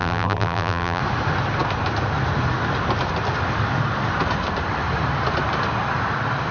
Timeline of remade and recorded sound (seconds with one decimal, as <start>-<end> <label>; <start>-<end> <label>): 0.0-1.0 remade; 1.0-6.5 recorded